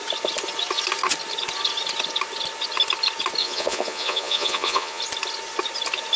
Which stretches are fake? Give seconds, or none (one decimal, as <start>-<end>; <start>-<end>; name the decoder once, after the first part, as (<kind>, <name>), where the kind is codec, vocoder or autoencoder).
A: 3.4-5.0 (vocoder, Vocos)